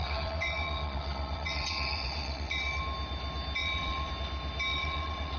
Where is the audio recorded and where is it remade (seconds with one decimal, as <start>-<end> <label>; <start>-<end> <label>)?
0.0-2.8 remade; 2.8-3.6 recorded; 3.6-4.1 remade; 4.1-4.7 recorded; 4.7-5.4 remade

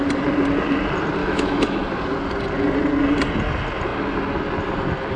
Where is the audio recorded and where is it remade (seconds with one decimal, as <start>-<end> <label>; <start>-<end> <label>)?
0.0-1.2 recorded; 1.2-1.8 remade; 1.8-5.2 recorded